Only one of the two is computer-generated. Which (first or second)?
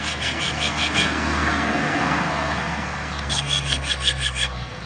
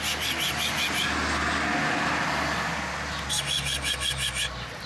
first